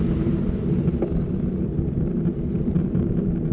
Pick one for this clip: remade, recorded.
recorded